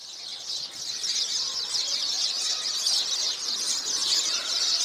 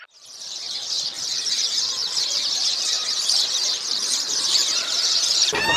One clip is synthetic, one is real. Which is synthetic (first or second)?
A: second